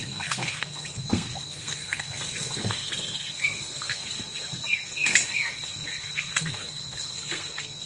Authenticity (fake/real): fake